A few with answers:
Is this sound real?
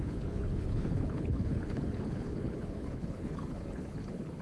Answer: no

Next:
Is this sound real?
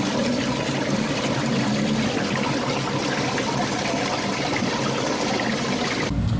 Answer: yes